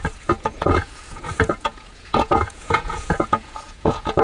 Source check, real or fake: fake